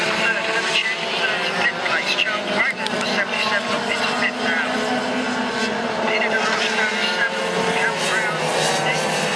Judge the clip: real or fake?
real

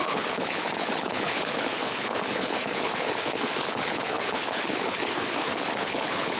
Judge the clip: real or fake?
fake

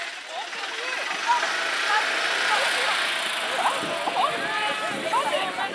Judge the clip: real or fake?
real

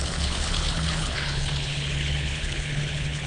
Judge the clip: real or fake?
fake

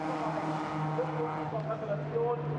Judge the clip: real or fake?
real